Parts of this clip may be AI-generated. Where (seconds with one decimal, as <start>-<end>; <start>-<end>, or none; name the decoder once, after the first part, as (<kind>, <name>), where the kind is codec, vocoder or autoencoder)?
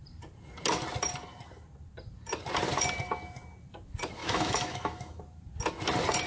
4.2-5.2 (autoencoder, DAC-VAE)